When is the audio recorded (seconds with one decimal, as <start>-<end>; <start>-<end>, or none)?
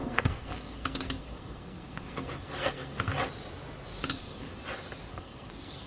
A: 3.1-4.1; 4.5-5.1